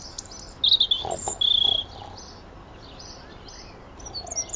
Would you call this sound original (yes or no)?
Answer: yes